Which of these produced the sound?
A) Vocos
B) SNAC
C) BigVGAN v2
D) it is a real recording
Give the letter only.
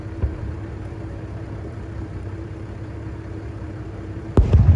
C